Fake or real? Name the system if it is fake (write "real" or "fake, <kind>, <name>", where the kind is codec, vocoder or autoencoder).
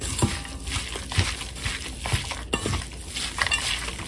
real